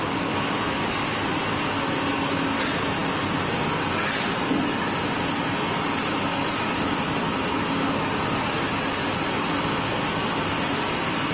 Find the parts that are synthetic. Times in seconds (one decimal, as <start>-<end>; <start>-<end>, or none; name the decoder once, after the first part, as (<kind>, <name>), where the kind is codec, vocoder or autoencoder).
none